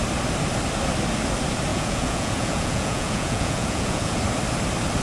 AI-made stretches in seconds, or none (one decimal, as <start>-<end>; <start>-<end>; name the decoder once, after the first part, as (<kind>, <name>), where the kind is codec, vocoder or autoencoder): 1.7-4.2 (vocoder, Vocos)